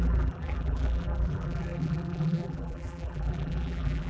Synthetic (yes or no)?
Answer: yes